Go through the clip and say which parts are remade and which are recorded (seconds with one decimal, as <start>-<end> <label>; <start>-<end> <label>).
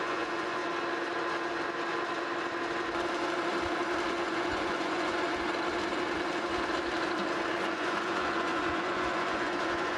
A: 0.0-0.6 remade; 0.6-4.1 recorded; 4.1-5.3 remade; 5.3-7.6 recorded; 7.6-10.0 remade